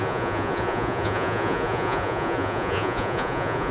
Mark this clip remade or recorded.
remade